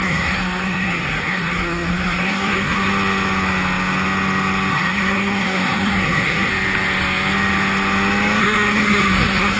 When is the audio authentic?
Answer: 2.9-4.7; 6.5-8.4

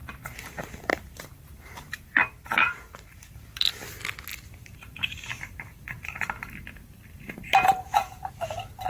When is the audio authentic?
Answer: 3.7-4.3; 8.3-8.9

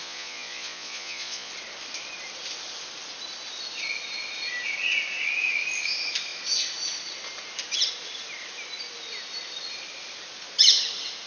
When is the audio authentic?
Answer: 1.5-11.3